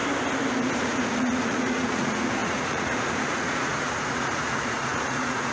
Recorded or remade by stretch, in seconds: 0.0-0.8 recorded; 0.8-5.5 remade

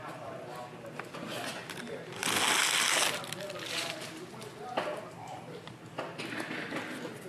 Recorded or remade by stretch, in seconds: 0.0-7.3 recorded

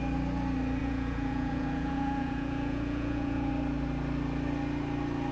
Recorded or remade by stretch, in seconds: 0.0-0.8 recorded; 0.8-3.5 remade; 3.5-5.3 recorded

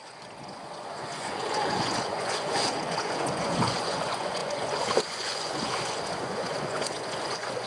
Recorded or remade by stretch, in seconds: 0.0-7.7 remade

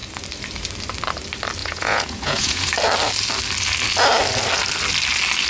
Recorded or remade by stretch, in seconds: 0.0-1.6 recorded; 1.6-2.7 remade; 2.7-5.5 recorded

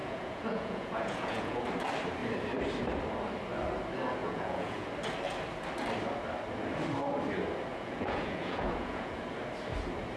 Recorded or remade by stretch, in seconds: 0.0-1.6 remade; 1.6-4.2 recorded; 4.2-4.9 remade; 4.9-7.7 recorded; 7.7-9.2 remade; 9.2-10.2 recorded